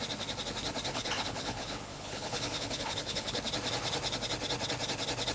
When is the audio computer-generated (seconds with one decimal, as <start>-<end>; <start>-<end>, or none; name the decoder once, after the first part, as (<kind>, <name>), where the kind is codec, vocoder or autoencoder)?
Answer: 0.9-3.4 (codec, HILCodec)